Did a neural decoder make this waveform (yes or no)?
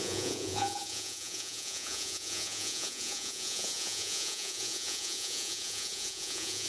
yes